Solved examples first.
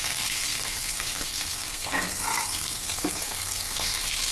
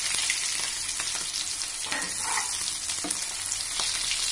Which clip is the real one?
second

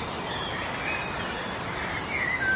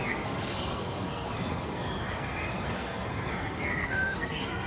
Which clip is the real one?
first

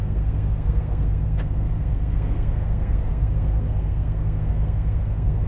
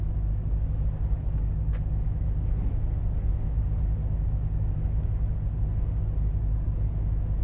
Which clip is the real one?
second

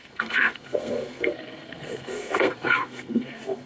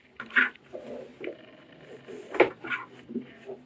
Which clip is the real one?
second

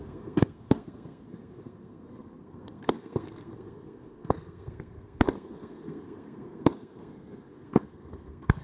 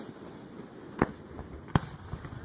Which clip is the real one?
second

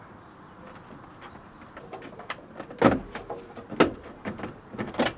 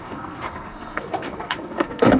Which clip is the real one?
first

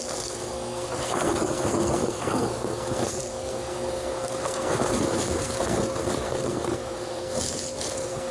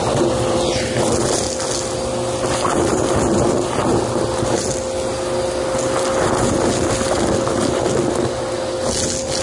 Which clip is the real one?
second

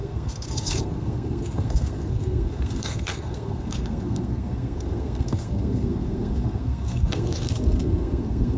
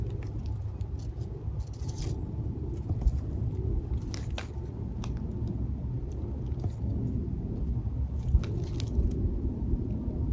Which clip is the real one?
second